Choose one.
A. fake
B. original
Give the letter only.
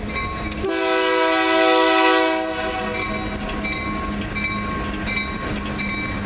B